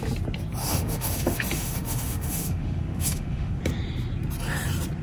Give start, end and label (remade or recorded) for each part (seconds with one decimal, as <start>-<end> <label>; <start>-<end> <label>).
0.0-0.6 recorded; 0.6-3.6 remade; 3.6-5.0 recorded